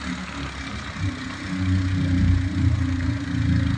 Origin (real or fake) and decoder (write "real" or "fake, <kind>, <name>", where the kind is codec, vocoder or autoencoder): real